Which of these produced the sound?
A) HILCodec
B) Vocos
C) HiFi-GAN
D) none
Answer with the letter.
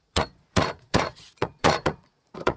B